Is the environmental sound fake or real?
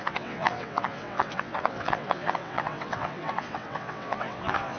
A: fake